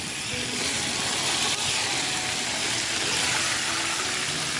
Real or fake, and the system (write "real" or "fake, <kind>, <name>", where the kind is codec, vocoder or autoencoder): real